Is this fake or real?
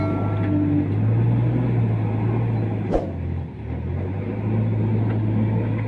real